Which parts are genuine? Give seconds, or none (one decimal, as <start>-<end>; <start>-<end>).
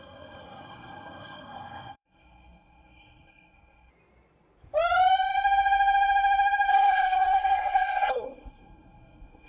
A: 3.9-6.7